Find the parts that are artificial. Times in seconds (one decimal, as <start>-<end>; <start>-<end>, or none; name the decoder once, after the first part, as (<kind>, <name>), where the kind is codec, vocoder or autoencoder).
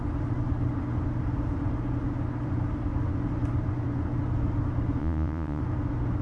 5.0-5.6 (vocoder, Vocos)